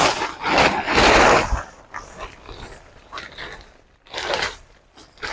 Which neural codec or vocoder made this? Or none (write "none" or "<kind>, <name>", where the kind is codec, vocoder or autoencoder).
none